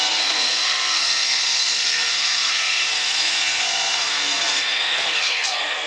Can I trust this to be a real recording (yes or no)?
no